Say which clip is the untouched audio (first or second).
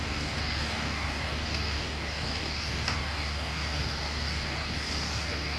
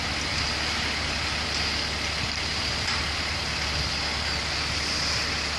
second